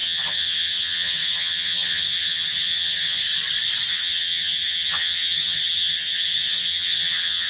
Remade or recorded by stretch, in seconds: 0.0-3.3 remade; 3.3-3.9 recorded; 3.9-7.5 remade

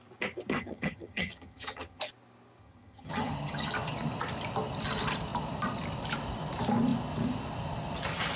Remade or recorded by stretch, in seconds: 0.0-0.5 recorded; 0.5-2.0 remade; 2.0-2.6 recorded; 2.6-3.7 remade; 3.7-8.4 recorded

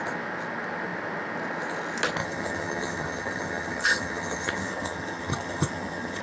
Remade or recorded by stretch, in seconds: 0.0-2.2 recorded; 2.2-6.2 remade

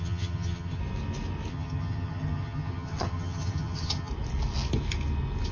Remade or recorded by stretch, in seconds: 0.0-0.8 remade; 0.8-1.5 recorded; 1.5-4.1 remade; 4.1-5.5 recorded